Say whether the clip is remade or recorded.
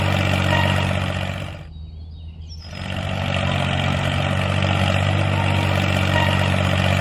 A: recorded